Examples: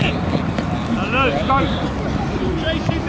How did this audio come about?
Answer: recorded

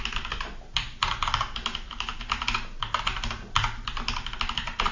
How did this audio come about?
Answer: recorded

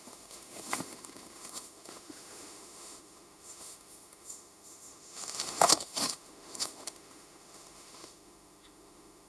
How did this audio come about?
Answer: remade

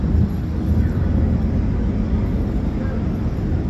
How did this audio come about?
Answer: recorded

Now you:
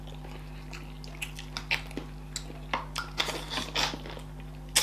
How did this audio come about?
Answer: recorded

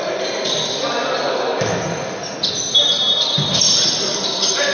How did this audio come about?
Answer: recorded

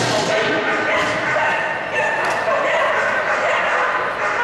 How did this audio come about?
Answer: recorded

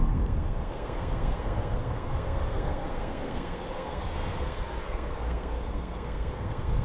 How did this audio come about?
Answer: remade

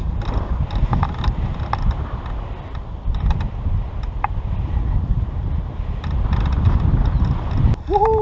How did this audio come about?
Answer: recorded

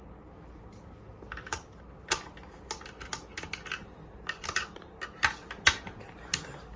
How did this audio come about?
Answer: recorded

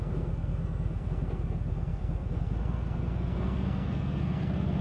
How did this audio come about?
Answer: remade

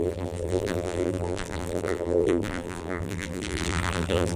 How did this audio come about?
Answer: remade